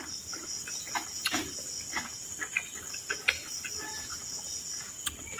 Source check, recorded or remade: recorded